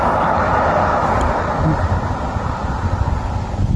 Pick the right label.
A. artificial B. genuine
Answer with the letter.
B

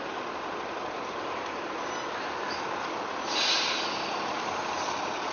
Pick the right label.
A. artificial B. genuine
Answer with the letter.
B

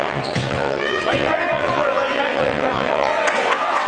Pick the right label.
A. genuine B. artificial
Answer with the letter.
B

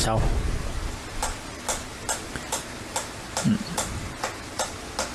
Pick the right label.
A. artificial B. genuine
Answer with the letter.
B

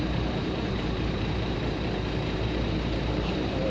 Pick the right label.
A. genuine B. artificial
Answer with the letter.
B